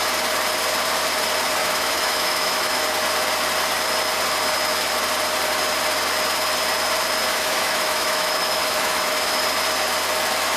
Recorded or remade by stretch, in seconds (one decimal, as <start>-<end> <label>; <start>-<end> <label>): 0.0-1.6 recorded; 1.6-2.8 remade; 2.8-7.3 recorded; 7.3-9.4 remade; 9.4-10.6 recorded